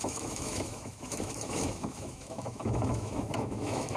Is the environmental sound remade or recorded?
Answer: remade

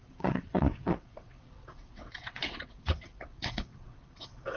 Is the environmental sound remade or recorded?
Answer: remade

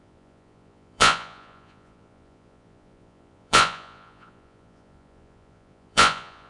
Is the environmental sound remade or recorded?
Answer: remade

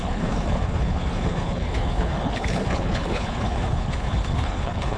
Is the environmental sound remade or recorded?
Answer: remade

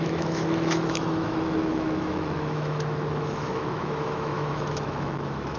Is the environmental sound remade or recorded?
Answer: remade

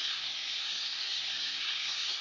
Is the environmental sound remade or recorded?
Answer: remade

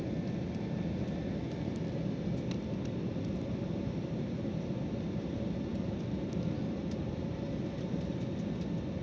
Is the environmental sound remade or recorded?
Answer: recorded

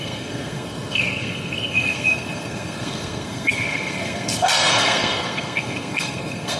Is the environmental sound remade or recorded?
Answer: remade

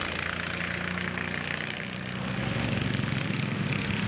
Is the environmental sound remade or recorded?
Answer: recorded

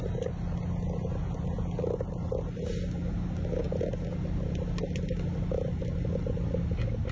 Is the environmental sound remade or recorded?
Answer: recorded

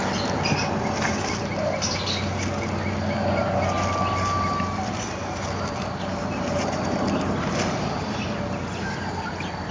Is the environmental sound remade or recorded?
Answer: recorded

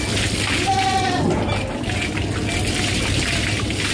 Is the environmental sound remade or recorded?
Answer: recorded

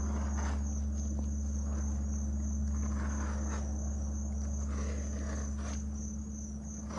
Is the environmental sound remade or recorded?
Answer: recorded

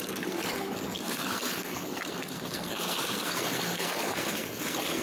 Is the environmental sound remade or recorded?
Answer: remade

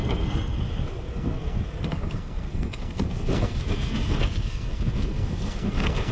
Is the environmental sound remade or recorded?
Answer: remade